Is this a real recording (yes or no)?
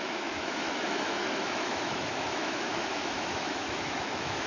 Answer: no